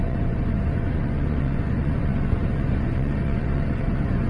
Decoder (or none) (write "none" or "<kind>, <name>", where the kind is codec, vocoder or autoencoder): vocoder, Vocos